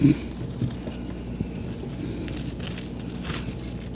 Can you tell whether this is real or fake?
real